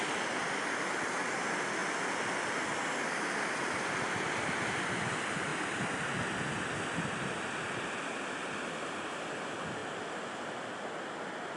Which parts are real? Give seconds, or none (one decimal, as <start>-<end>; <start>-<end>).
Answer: 0.0-11.6